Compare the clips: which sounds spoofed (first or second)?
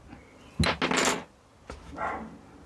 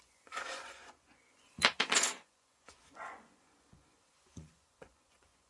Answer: second